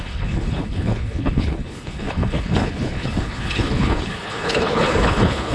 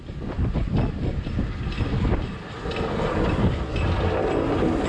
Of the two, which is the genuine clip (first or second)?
second